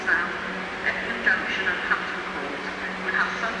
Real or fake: real